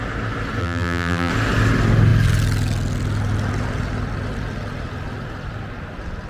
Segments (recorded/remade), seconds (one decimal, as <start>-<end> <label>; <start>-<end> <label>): 0.0-0.6 recorded; 0.6-1.3 remade; 1.3-6.3 recorded